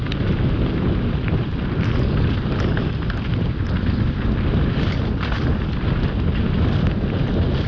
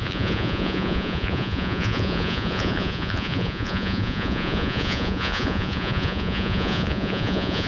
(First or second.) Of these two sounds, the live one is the first